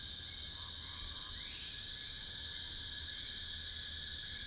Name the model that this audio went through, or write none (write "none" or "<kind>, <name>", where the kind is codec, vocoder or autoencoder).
none